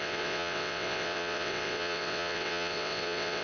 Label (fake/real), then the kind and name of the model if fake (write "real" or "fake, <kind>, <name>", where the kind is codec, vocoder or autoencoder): fake, vocoder, WaveNeXt